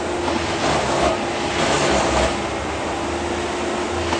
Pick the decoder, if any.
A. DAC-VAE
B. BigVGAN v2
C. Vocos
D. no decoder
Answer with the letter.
D